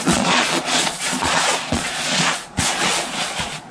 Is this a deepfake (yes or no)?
yes